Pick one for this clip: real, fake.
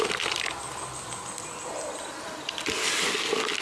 real